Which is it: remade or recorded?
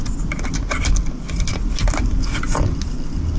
recorded